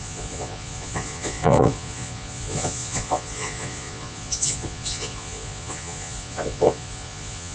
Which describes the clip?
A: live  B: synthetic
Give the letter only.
B